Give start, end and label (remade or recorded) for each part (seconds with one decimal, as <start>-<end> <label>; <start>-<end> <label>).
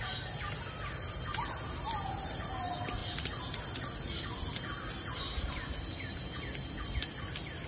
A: 0.0-7.7 recorded